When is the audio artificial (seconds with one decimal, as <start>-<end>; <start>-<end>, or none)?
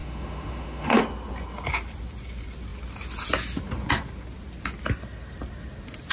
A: 0.0-1.0